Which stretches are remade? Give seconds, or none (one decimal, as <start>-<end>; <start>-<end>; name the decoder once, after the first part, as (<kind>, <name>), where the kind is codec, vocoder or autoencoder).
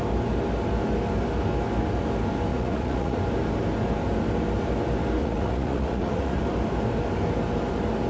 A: 2.5-3.2 (vocoder, Vocos); 5.2-6.4